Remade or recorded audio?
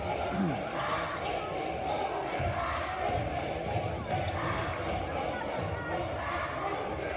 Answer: recorded